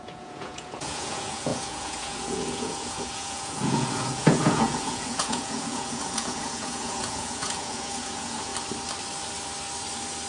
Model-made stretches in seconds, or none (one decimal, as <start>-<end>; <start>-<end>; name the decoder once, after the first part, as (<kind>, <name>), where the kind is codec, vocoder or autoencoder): 0.0-8.5 (vocoder, Vocos)